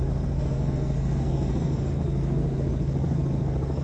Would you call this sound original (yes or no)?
no